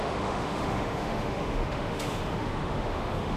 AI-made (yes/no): yes